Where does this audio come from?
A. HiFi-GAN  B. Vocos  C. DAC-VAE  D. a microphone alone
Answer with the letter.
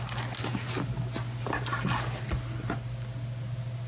D